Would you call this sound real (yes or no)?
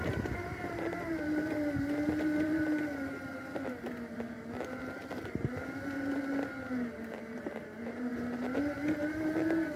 yes